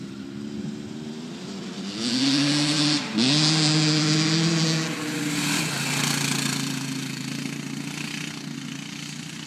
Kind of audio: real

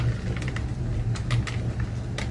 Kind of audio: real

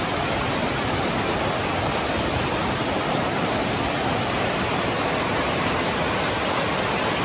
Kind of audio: real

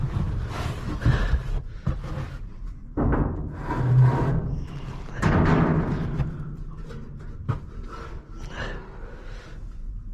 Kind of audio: real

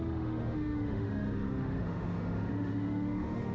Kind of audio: fake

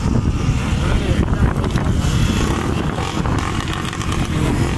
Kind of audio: real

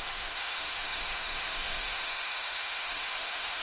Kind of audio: fake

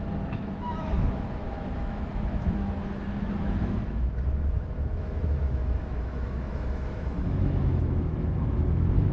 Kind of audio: fake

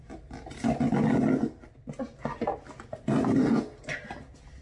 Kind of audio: real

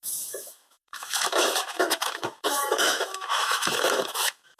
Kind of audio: fake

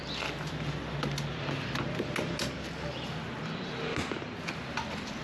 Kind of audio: real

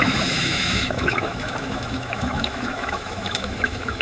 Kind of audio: fake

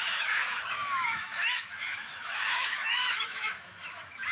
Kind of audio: fake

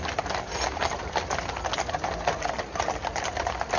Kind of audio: real